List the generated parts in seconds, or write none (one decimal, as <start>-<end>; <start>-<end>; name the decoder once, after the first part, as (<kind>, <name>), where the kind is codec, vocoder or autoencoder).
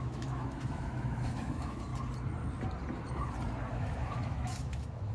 0.0-1.9 (autoencoder, DAC-VAE); 3.7-5.1